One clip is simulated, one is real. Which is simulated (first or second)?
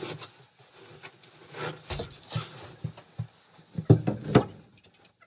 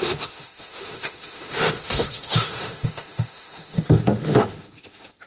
second